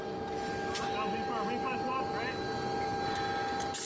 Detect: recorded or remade recorded